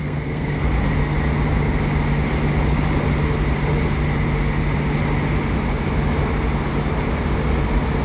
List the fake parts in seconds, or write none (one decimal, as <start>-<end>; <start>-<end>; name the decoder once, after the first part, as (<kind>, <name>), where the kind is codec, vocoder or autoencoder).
0.0-0.6 (codec, SNAC)